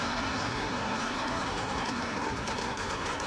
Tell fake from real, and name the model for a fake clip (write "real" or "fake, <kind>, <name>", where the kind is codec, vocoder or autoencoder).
fake, codec, SNAC